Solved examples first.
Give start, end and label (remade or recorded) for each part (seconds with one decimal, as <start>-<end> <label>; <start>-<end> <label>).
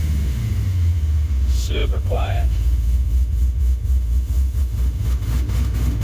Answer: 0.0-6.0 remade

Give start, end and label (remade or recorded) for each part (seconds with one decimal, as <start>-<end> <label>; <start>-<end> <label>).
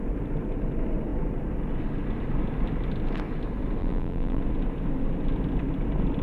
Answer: 0.0-3.8 recorded; 3.8-4.4 remade; 4.4-6.2 recorded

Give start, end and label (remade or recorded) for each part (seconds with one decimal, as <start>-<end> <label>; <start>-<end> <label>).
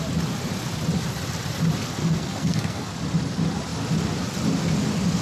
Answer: 0.0-2.0 recorded; 2.0-2.9 remade; 2.9-5.2 recorded